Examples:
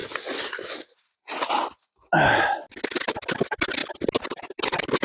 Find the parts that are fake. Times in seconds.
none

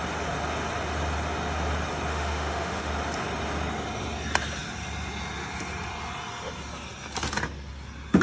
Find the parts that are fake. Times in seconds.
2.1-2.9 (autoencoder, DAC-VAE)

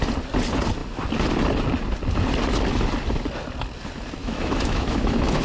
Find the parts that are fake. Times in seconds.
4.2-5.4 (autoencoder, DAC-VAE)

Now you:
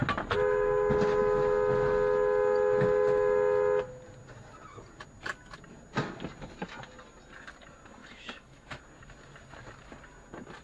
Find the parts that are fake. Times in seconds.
8.0-8.8 (autoencoder, DAC-VAE)